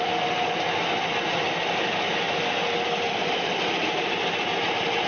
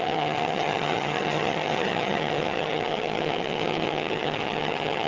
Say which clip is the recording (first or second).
first